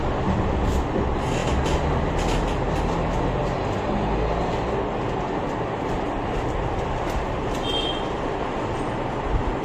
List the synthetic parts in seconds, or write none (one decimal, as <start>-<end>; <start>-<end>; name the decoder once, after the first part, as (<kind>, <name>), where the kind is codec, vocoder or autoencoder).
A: none